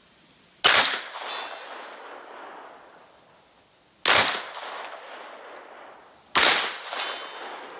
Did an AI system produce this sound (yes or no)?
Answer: no